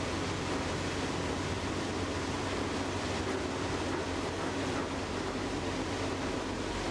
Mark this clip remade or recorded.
recorded